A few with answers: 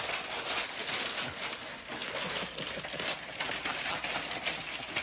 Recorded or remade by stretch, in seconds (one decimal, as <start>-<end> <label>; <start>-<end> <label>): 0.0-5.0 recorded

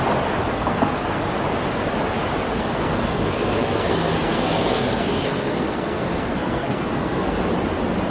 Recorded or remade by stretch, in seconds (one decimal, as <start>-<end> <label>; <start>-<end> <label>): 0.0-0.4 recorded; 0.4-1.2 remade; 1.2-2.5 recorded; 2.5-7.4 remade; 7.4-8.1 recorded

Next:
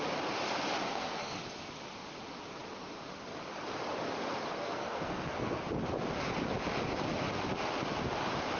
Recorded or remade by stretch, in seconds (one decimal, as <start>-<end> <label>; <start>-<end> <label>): 0.0-0.9 recorded; 0.9-1.4 remade; 1.4-4.5 recorded; 4.5-5.6 remade; 5.6-8.6 recorded